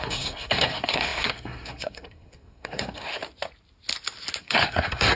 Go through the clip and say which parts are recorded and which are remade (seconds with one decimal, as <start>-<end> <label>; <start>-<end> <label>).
0.0-3.2 remade; 3.2-4.4 recorded; 4.4-5.2 remade